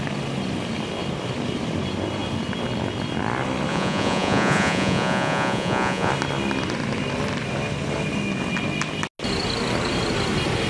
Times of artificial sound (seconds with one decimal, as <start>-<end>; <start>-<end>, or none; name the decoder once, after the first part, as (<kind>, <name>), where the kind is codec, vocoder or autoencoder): 3.7-6.1 (vocoder, Vocos)